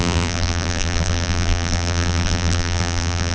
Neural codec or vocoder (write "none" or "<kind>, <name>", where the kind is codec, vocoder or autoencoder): vocoder, BigVGAN v2